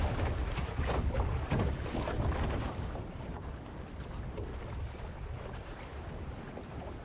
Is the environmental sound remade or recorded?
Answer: remade